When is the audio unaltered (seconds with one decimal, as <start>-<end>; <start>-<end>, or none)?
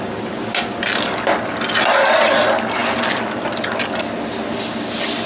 0.0-5.3